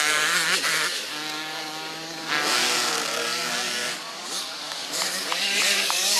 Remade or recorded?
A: remade